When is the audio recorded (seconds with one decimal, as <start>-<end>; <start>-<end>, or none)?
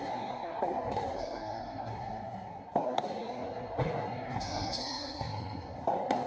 none